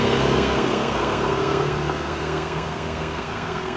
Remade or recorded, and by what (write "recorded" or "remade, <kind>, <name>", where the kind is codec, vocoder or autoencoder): remade, codec, SNAC